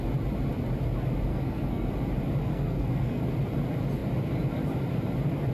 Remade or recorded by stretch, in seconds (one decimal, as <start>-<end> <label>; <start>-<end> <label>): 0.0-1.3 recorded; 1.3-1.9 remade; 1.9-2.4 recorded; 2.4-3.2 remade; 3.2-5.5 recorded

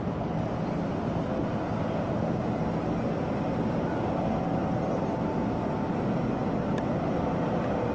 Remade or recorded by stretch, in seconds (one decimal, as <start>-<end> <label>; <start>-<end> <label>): 0.0-7.9 recorded

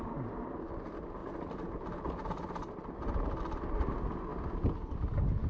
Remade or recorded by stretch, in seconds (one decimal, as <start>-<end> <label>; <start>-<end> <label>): 0.0-5.5 recorded

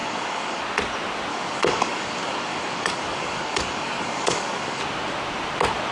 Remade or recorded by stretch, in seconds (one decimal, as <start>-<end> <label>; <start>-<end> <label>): 0.0-0.6 remade; 0.6-1.3 recorded; 1.3-4.8 remade; 4.8-5.9 recorded

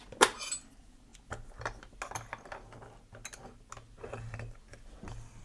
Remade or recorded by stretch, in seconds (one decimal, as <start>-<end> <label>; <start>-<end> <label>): 0.0-5.4 recorded